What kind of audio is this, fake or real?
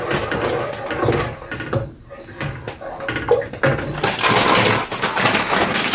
real